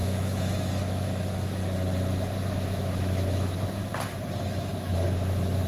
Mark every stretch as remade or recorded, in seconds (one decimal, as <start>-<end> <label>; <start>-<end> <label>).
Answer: 0.0-1.6 remade; 1.6-2.4 recorded; 2.4-3.9 remade; 3.9-4.4 recorded; 4.4-5.7 remade